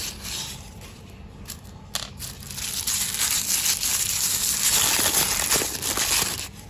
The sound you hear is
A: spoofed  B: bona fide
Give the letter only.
B